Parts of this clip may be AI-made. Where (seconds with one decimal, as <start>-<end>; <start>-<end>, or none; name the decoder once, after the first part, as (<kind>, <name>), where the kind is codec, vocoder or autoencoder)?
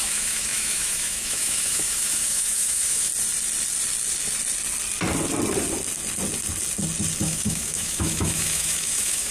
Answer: 0.0-3.1 (autoencoder, DAC-VAE); 7.2-9.3